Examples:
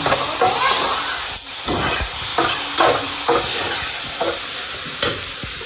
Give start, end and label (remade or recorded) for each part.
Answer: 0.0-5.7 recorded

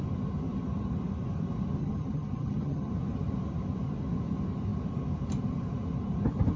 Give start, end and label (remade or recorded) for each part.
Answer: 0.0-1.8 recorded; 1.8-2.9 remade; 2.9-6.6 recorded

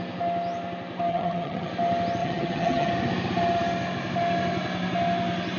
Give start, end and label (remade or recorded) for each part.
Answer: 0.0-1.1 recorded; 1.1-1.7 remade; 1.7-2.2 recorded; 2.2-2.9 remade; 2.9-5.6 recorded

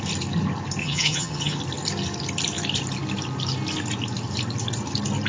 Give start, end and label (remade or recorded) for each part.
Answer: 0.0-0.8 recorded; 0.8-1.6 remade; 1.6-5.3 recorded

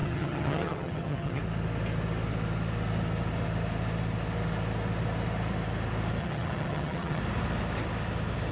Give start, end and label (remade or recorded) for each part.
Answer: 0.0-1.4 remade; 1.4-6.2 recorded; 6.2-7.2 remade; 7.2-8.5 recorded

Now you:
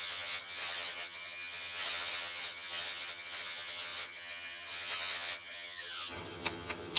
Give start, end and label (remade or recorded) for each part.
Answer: 0.0-7.0 remade

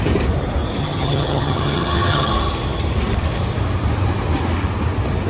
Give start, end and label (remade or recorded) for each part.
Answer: 0.0-0.8 recorded; 0.8-2.3 remade; 2.3-5.3 recorded

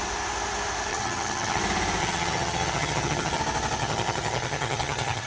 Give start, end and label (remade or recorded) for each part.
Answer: 0.0-0.9 recorded; 0.9-1.6 remade; 1.6-2.0 recorded; 2.0-3.4 remade; 3.4-3.8 recorded; 3.8-5.3 remade